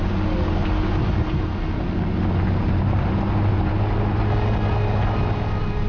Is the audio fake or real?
real